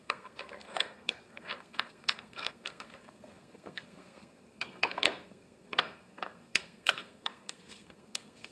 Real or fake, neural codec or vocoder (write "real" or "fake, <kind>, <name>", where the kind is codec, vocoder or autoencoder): fake, codec, SNAC